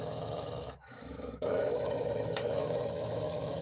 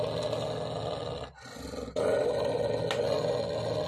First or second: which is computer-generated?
first